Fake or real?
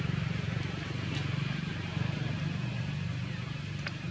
real